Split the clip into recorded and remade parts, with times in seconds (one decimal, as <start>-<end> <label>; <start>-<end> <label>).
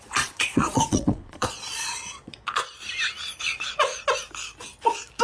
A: 0.0-2.6 remade; 2.6-3.4 recorded; 3.4-3.9 remade; 3.9-5.2 recorded